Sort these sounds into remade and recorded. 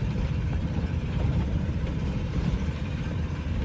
remade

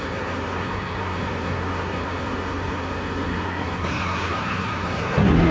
remade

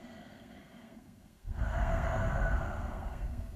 remade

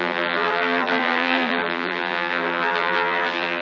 remade